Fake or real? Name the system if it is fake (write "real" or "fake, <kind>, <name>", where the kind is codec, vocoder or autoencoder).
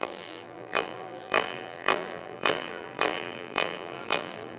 fake, vocoder, BigVGAN v2